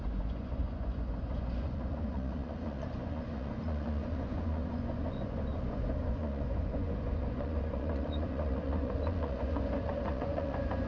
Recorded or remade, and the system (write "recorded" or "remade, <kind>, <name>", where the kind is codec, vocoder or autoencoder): remade, vocoder, Vocos